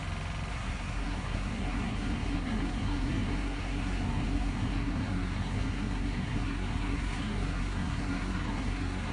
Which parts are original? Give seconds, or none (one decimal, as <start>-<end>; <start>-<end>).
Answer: 0.0-0.5